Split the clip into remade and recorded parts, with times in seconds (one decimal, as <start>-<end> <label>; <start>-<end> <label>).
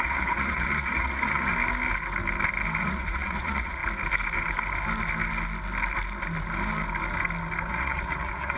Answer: 0.0-1.5 remade; 1.5-2.8 recorded; 2.8-3.8 remade; 3.8-7.7 recorded; 7.7-8.6 remade